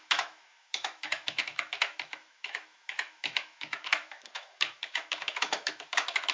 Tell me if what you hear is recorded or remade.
remade